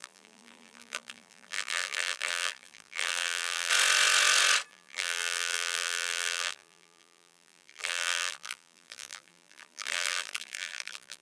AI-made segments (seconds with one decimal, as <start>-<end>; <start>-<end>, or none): 0.0-3.7; 4.7-11.2